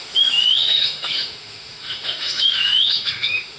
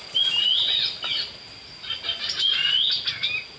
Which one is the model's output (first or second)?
first